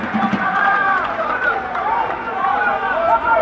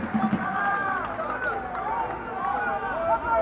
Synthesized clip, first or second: first